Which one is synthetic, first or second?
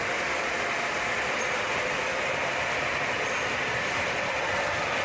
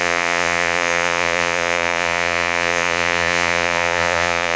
second